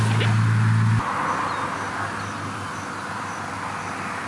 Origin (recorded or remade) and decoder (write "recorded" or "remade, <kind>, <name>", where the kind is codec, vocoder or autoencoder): recorded